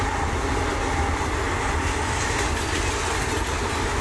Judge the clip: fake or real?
real